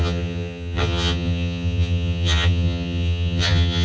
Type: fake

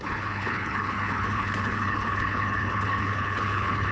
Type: fake